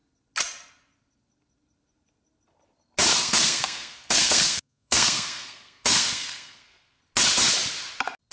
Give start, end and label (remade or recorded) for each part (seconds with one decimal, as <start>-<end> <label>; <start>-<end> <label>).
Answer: 0.0-3.1 recorded; 3.1-7.0 remade; 7.0-8.3 recorded